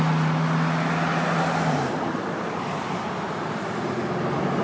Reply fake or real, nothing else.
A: real